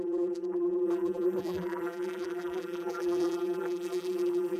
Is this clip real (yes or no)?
no